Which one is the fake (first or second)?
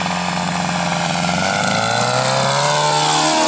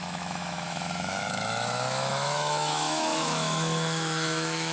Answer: second